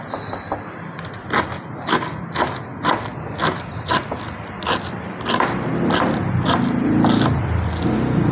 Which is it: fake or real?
real